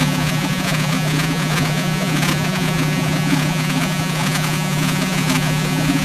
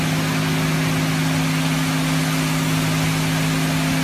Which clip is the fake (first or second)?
first